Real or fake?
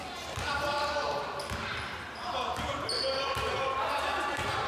real